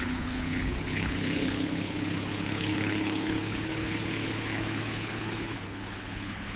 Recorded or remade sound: remade